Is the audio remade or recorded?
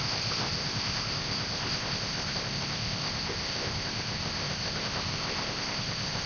remade